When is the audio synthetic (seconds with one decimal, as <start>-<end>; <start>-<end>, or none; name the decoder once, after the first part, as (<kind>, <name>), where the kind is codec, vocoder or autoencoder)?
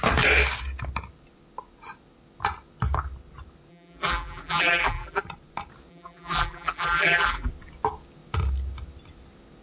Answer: 3.7-5.2 (vocoder, BigVGAN v2); 5.9-7.5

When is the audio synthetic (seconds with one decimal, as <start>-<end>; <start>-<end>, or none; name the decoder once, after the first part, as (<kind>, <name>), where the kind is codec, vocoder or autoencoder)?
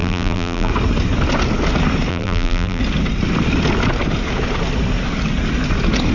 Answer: 0.0-0.7 (vocoder, BigVGAN v2); 2.1-2.8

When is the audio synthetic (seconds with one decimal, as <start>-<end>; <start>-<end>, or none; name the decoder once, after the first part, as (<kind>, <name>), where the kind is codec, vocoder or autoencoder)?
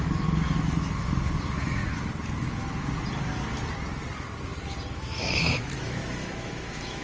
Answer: 0.0-1.8 (autoencoder, DAC-VAE); 4.9-7.0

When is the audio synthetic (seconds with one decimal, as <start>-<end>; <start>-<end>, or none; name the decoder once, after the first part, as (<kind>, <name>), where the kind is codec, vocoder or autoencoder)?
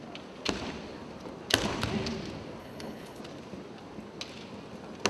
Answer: 2.6-3.2 (codec, HILCodec)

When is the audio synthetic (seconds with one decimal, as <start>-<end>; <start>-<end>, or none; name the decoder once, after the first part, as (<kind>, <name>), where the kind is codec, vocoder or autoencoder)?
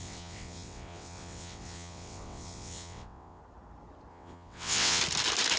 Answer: 0.0-3.4 (vocoder, WaveNeXt); 4.1-5.0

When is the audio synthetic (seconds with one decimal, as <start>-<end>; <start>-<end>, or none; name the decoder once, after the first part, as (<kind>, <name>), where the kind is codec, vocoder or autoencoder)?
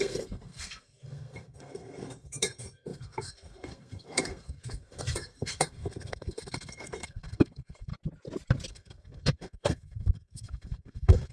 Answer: 0.0-7.9 (codec, SNAC); 8.7-11.3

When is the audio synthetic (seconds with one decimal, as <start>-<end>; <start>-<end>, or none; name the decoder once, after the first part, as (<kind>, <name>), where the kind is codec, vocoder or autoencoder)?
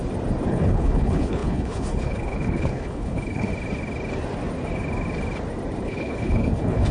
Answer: 0.5-3.5 (codec, HILCodec); 5.8-6.9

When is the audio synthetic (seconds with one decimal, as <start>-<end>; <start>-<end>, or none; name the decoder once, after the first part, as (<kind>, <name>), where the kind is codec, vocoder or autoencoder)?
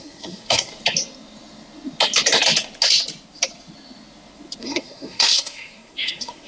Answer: 0.0-0.7 (codec, SNAC); 4.6-6.5